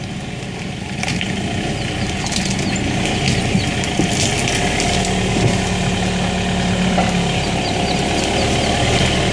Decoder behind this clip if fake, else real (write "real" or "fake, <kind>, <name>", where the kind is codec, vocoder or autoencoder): real